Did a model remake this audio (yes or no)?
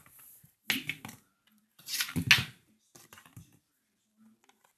no